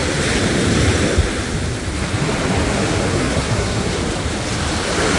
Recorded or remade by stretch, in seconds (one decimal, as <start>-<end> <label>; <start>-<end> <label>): 0.0-3.1 recorded; 3.1-4.0 remade; 4.0-5.2 recorded